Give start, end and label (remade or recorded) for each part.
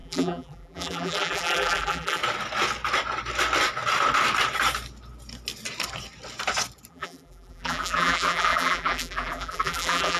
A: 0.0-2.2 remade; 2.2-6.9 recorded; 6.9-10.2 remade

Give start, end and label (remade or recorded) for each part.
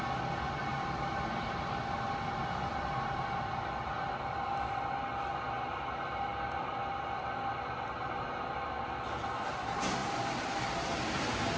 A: 0.0-10.0 recorded; 10.0-10.6 remade; 10.6-11.6 recorded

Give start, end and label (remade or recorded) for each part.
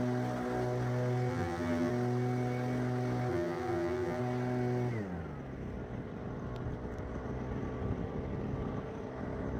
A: 0.0-1.3 recorded; 1.3-1.9 remade; 1.9-3.3 recorded; 3.3-4.2 remade; 4.2-9.6 recorded